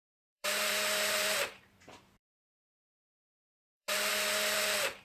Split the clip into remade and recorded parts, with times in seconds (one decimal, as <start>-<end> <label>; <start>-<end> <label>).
0.0-5.0 remade